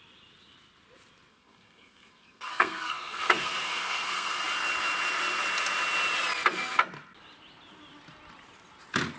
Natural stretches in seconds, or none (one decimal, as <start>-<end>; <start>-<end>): 0.0-1.3; 4.4-9.2